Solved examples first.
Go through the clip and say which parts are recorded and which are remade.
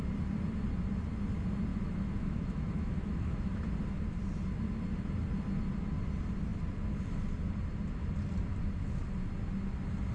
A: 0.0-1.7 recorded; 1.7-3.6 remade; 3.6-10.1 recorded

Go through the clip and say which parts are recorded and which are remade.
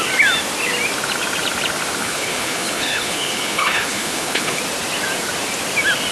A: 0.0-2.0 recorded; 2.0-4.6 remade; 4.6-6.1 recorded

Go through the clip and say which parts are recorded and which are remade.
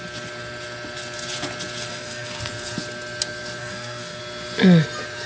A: 0.0-1.9 recorded; 1.9-2.4 remade; 2.4-3.6 recorded; 3.6-4.2 remade; 4.2-5.3 recorded